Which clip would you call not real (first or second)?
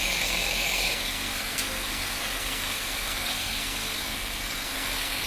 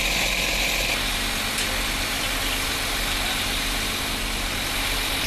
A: first